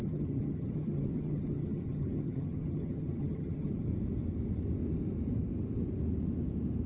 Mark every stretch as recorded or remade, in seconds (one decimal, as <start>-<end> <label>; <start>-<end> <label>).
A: 0.0-3.9 remade; 3.9-6.9 recorded